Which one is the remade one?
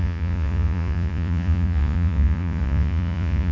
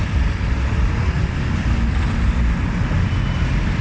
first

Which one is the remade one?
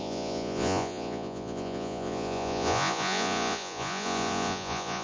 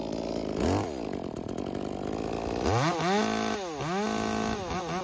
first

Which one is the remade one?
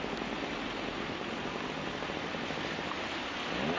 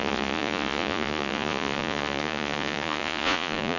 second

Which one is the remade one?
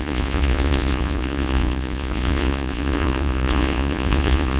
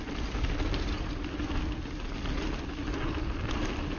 first